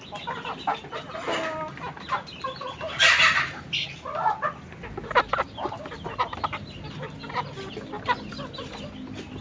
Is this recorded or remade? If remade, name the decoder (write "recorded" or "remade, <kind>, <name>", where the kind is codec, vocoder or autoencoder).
recorded